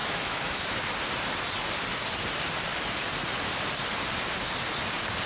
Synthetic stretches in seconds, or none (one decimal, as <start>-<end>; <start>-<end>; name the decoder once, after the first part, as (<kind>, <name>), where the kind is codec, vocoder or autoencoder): 0.0-0.6 (autoencoder, DAC-VAE)